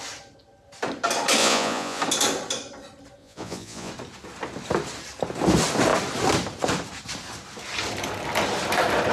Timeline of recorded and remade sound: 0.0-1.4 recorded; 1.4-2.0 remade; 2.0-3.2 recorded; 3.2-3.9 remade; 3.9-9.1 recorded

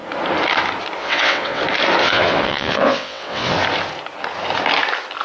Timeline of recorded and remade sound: 0.0-1.0 recorded; 1.0-1.6 remade; 1.6-2.0 recorded; 2.0-3.5 remade; 3.5-5.2 recorded

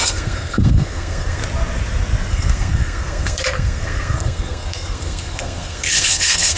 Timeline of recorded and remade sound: 0.0-1.4 remade; 1.4-2.3 recorded; 2.3-6.6 remade

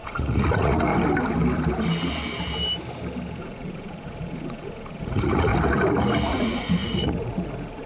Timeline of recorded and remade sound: 0.0-0.9 remade; 0.9-3.4 recorded; 3.4-5.5 remade; 5.5-6.3 recorded; 6.3-7.9 remade

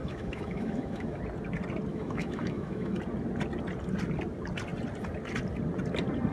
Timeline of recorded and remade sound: 0.0-1.2 remade; 1.2-1.9 recorded; 1.9-3.0 remade; 3.0-6.3 recorded